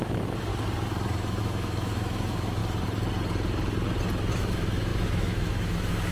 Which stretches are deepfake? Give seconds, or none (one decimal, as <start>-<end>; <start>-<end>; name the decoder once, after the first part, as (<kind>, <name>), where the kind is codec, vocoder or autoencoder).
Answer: 0.0-0.5 (autoencoder, DAC-VAE); 1.4-2.6; 4.3-6.1